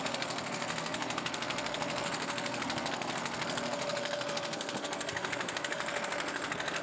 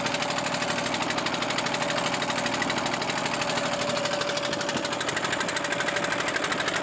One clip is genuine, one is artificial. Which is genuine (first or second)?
second